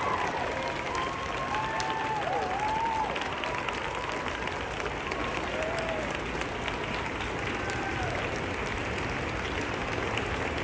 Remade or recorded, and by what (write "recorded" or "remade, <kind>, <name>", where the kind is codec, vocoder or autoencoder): recorded